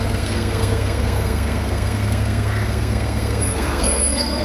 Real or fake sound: fake